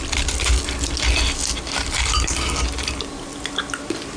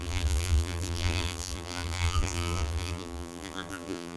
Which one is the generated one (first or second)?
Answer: second